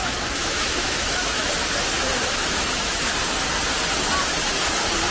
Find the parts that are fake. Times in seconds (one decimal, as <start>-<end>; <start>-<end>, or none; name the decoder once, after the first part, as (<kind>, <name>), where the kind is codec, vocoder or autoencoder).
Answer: 0.0-1.5 (autoencoder, DAC-VAE); 2.4-3.0